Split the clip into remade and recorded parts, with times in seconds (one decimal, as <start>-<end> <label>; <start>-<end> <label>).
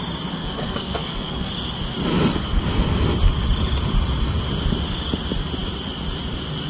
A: 0.0-0.4 recorded; 0.4-1.5 remade; 1.5-6.7 recorded